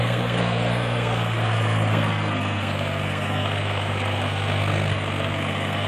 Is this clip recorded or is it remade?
remade